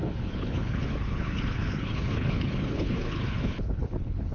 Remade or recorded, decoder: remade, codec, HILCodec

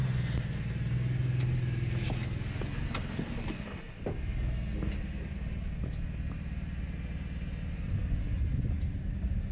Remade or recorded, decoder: recorded